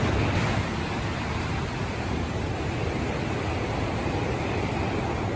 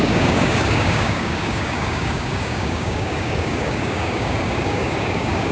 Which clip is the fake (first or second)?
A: second